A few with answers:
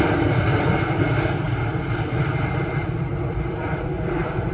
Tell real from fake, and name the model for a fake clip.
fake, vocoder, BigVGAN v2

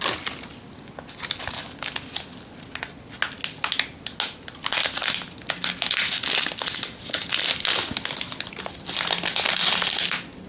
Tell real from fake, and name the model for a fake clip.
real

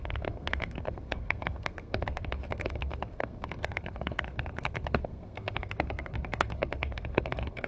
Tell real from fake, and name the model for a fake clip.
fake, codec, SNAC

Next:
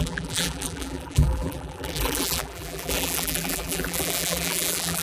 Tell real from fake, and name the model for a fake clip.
fake, vocoder, BigVGAN v2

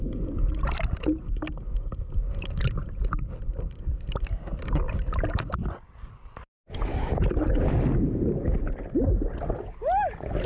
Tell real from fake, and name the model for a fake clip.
real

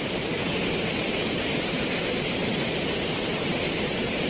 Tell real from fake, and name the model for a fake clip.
fake, vocoder, BigVGAN v2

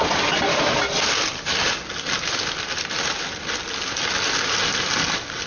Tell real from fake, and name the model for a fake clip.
real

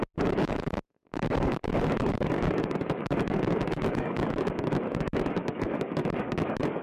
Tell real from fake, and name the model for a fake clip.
fake, codec, DAC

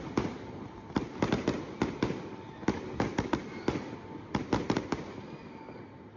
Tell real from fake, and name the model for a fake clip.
real